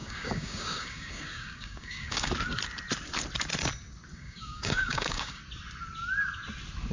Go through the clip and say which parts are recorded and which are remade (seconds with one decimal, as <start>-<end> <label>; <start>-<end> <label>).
0.0-2.3 remade; 2.3-4.1 recorded; 4.1-5.4 remade; 5.4-6.9 recorded